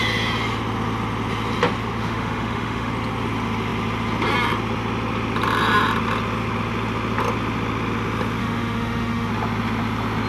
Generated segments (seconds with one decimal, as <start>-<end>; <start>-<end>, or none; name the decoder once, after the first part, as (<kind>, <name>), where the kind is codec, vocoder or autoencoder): 2.0-2.9 (autoencoder, DAC-VAE); 8.4-9.3